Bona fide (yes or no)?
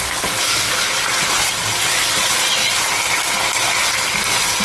yes